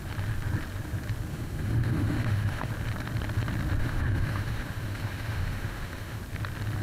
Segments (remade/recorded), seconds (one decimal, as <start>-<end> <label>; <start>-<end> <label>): 0.0-1.3 recorded; 1.3-2.7 remade; 2.7-3.8 recorded; 3.8-6.2 remade; 6.2-6.8 recorded